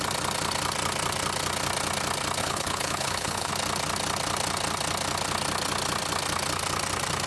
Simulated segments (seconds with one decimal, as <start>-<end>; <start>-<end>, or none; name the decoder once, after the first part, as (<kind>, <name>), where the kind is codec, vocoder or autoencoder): 2.4-3.5 (codec, HILCodec)